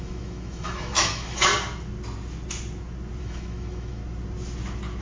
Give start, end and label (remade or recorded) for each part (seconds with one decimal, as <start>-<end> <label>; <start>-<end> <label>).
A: 0.0-1.5 remade; 1.5-3.2 recorded; 3.2-4.0 remade; 4.0-5.0 recorded